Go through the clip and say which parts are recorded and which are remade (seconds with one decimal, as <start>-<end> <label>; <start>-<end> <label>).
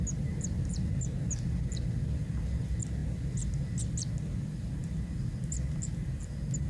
0.0-6.7 recorded